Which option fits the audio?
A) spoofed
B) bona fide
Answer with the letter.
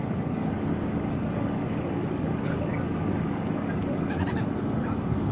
A